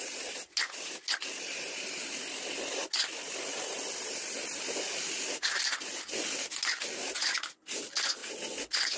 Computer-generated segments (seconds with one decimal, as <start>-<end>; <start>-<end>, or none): none